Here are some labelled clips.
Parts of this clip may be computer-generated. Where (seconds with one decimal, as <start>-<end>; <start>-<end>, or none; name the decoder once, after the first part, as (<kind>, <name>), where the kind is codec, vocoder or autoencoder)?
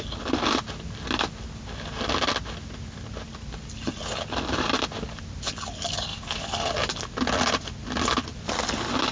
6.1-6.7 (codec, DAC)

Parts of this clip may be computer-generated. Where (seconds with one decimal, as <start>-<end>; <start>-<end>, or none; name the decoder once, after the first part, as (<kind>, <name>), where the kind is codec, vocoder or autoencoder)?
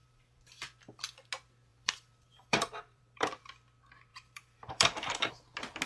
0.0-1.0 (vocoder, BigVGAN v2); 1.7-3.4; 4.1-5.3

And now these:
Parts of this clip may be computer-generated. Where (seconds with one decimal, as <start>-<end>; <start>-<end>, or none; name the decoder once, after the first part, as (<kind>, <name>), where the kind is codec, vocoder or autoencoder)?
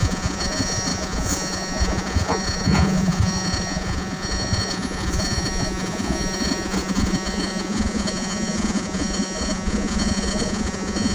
0.0-11.1 (vocoder, Vocos)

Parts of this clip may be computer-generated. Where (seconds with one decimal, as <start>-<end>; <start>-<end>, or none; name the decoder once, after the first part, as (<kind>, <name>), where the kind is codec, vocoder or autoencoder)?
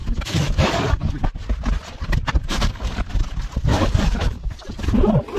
0.0-1.1 (codec, DAC); 2.5-3.1; 3.7-4.7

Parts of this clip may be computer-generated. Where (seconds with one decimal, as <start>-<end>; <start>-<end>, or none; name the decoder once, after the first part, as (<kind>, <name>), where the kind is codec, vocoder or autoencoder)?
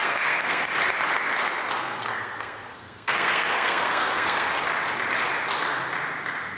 0.0-0.7 (codec, SNAC); 1.8-4.5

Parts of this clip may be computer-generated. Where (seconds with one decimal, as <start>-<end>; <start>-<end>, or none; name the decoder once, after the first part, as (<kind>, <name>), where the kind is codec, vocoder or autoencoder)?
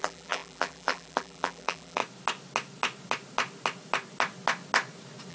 0.0-2.0 (vocoder, BigVGAN v2)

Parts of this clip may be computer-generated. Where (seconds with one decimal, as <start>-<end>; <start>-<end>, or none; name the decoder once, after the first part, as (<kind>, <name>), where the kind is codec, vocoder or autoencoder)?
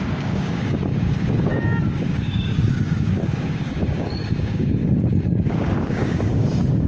0.0-6.9 (codec, DAC)